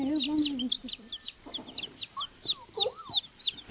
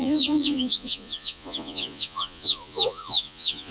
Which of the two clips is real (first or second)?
first